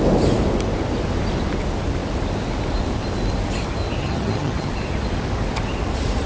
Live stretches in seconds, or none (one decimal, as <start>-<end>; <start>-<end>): 0.0-4.0; 4.7-6.3